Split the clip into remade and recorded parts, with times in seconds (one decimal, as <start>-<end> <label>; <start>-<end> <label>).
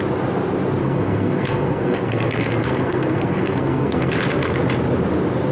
0.0-0.8 recorded; 0.8-4.1 remade; 4.1-5.5 recorded